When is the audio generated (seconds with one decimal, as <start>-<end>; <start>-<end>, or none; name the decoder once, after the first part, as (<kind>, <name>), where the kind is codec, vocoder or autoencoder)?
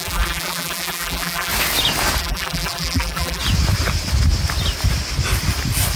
0.0-1.5 (vocoder, BigVGAN v2); 2.2-3.4